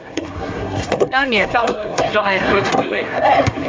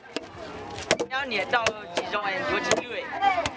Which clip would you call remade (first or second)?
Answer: first